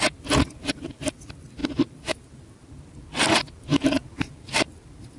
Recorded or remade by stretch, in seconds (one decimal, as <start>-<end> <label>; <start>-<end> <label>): 0.0-3.7 recorded; 3.7-4.8 remade; 4.8-5.2 recorded